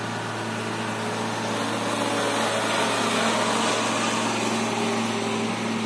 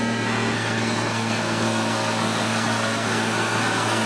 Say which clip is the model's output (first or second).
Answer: second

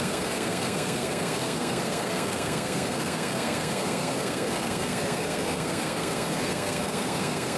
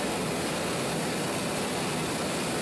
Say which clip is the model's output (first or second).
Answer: first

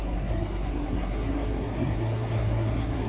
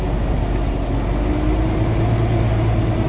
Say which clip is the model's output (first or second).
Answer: first